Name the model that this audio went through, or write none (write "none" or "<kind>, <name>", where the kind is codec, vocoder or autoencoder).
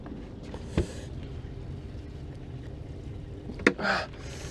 none